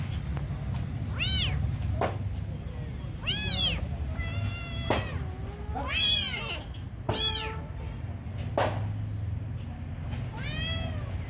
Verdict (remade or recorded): recorded